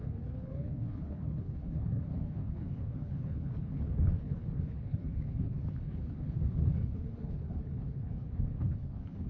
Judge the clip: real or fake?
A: fake